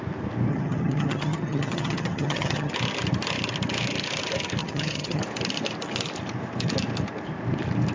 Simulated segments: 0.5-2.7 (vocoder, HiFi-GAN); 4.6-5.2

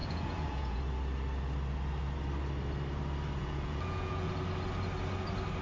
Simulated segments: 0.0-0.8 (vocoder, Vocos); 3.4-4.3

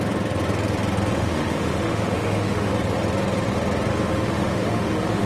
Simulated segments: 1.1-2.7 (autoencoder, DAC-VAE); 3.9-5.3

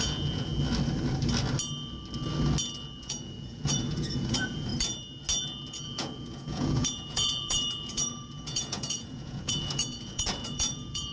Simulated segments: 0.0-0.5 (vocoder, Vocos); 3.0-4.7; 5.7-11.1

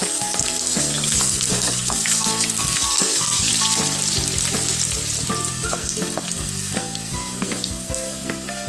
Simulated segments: 0.0-3.5 (codec, SNAC); 5.5-8.7

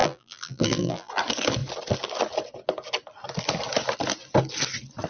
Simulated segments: 0.0-1.1 (vocoder, BigVGAN v2)

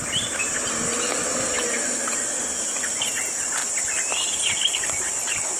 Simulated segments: 3.6-4.4 (vocoder, BigVGAN v2)

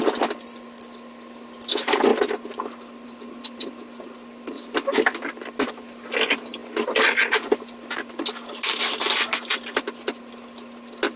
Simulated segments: none